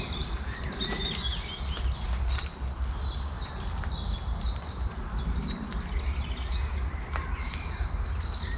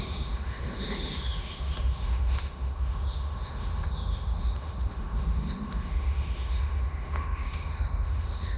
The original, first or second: first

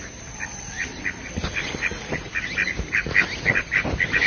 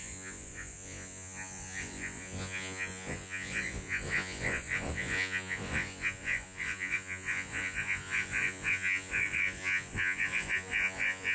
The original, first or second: first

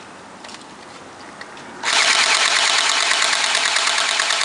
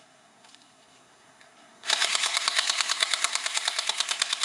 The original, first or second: first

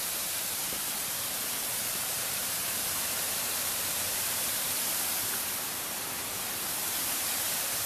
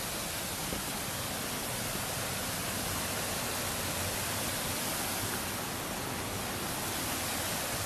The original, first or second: second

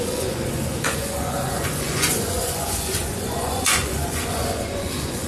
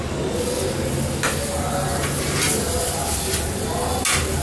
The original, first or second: second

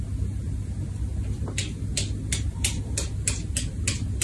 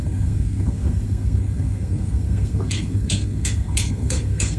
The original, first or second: first